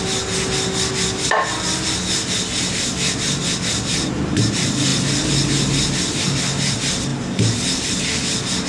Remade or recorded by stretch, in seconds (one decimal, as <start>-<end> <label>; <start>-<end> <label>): 0.0-8.7 recorded